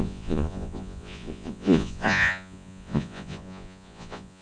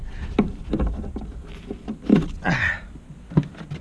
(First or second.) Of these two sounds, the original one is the second